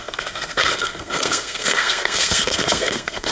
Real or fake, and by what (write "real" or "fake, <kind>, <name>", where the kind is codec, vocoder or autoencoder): fake, codec, SNAC